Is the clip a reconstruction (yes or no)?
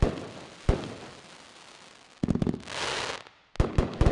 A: no